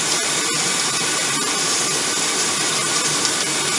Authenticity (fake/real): fake